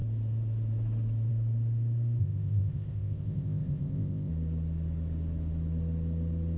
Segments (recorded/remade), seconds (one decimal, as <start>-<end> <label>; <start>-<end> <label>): 0.0-2.2 recorded; 2.2-4.3 remade; 4.3-6.6 recorded